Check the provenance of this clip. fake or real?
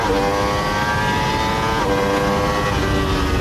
real